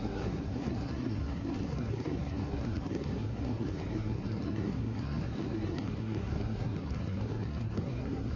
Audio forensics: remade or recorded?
remade